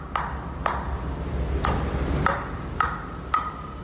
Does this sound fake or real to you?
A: real